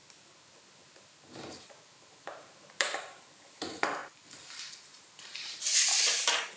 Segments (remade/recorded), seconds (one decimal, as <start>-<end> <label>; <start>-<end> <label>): 0.0-1.7 recorded; 1.7-4.0 remade; 4.0-4.6 recorded; 4.6-6.6 remade